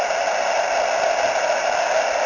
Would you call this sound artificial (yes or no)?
no